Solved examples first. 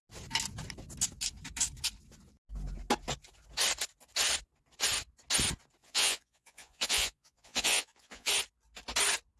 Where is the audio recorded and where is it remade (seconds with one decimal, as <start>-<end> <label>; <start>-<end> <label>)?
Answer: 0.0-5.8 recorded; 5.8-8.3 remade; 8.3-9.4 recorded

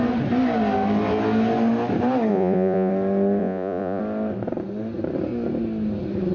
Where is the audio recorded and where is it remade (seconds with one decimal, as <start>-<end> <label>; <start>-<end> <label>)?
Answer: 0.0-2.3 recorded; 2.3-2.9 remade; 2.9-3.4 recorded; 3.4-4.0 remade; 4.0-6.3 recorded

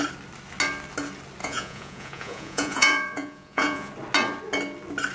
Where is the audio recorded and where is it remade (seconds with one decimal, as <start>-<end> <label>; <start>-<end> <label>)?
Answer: 0.0-1.4 recorded; 1.4-3.9 remade; 3.9-5.1 recorded

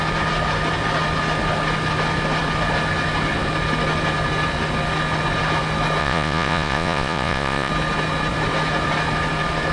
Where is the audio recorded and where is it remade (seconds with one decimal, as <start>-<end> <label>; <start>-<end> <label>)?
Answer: 0.0-6.0 recorded; 6.0-7.7 remade; 7.7-9.7 recorded